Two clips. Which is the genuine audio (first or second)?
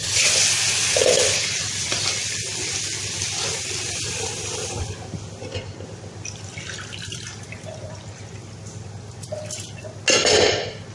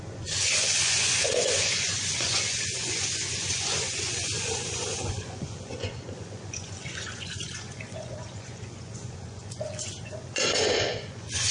first